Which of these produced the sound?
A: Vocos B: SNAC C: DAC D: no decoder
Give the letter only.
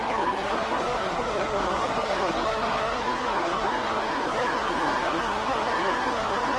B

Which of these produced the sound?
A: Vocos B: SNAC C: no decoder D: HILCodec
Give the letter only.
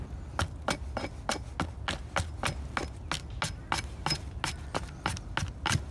C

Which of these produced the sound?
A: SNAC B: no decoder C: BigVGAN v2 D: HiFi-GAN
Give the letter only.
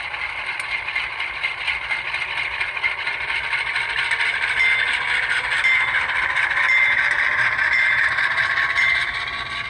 B